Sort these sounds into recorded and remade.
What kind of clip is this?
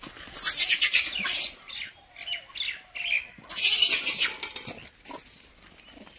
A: recorded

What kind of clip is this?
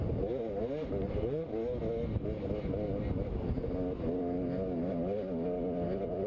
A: recorded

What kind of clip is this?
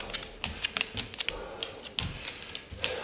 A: recorded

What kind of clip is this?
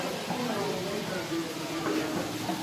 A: recorded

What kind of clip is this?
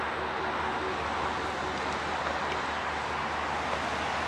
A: recorded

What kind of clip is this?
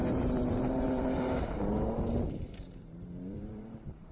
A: remade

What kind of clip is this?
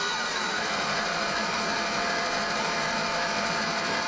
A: remade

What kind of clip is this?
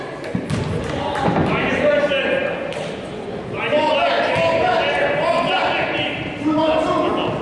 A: recorded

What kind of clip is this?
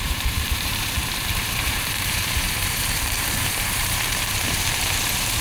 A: remade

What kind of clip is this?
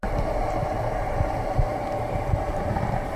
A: remade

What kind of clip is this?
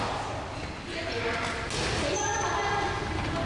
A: recorded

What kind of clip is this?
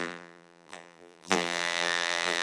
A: remade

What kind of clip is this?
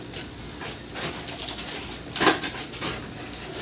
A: recorded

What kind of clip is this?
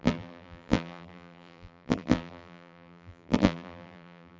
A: remade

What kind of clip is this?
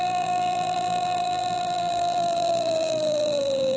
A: remade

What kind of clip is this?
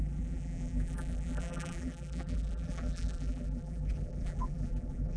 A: remade